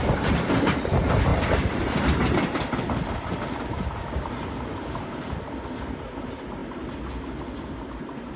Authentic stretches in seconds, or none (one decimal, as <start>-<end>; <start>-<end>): 0.0-8.4